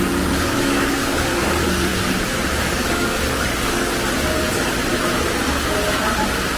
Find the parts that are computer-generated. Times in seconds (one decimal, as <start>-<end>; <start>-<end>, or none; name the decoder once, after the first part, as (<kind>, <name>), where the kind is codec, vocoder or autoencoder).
0.0-1.9 (codec, DAC); 2.6-3.9